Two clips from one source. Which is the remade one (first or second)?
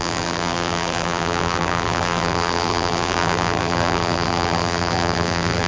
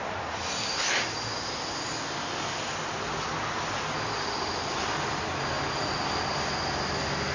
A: first